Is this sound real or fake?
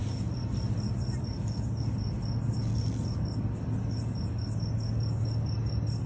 real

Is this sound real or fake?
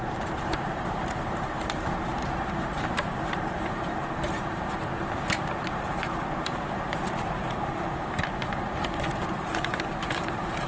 fake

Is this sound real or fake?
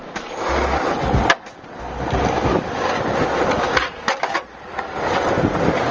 real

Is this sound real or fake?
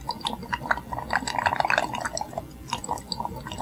real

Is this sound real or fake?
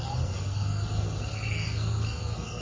fake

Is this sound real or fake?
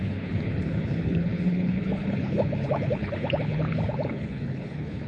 fake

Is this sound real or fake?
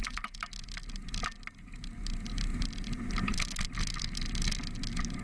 real